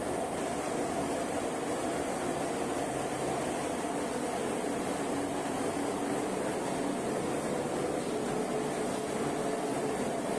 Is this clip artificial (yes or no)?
no